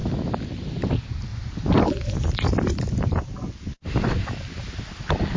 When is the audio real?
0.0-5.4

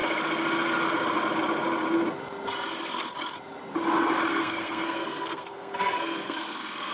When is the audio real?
0.0-4.3

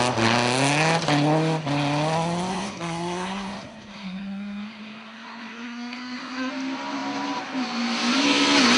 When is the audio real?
0.0-2.5; 6.5-8.8